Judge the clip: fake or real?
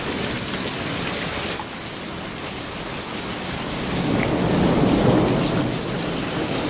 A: real